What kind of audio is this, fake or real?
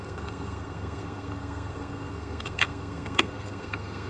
fake